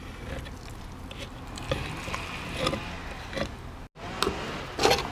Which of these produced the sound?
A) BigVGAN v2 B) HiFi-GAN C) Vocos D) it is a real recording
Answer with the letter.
D